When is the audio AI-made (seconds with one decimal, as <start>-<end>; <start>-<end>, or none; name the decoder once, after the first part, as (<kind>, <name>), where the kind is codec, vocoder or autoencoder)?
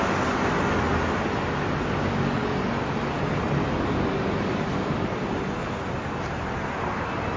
none